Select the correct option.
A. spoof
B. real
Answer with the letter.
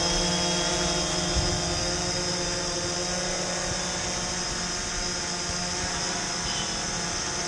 B